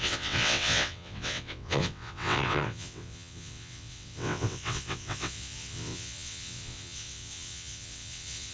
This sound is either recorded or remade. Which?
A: remade